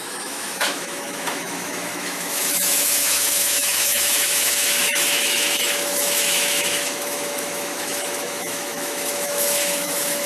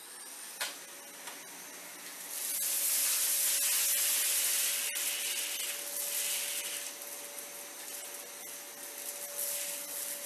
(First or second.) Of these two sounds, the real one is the second